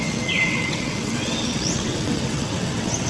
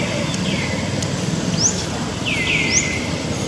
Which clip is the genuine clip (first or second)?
second